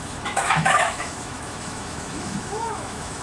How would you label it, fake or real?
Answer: fake